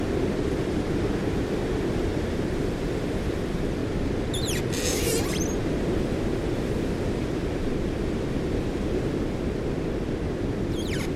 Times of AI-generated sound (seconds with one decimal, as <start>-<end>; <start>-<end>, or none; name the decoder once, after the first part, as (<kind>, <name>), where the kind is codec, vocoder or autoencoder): 0.0-11.2 (vocoder, BigVGAN v2)